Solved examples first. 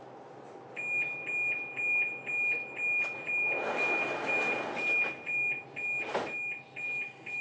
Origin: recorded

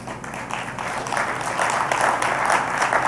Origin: recorded